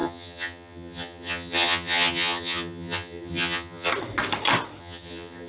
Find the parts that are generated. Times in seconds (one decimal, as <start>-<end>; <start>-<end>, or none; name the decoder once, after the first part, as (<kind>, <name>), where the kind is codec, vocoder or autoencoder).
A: 0.0-3.9 (vocoder, HiFi-GAN); 4.8-5.5